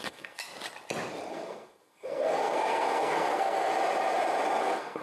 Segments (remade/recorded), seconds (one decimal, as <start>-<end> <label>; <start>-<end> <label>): 0.0-0.4 remade; 0.4-1.3 recorded; 1.3-3.7 remade; 3.7-4.6 recorded; 4.6-5.0 remade